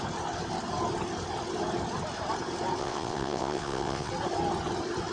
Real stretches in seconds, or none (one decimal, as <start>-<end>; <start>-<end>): 0.0-2.8; 4.1-5.1